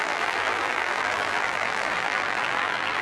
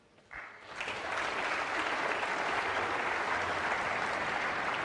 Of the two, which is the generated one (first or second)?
first